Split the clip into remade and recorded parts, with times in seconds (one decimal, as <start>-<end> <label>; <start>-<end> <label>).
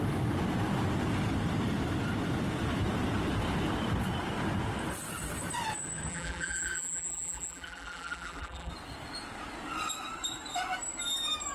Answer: 0.0-6.1 recorded; 6.1-8.7 remade; 8.7-11.5 recorded